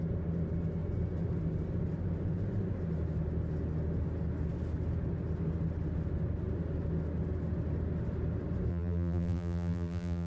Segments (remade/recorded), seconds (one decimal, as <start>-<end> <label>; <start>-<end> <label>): 0.0-8.7 recorded; 8.7-10.3 remade